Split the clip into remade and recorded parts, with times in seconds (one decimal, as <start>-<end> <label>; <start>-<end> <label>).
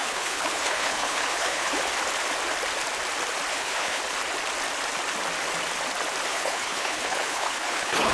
0.0-1.7 remade; 1.7-3.5 recorded; 3.5-4.0 remade; 4.0-6.3 recorded; 6.3-8.1 remade